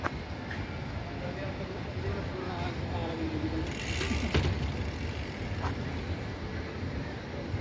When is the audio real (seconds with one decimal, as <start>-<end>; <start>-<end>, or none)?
0.0-7.6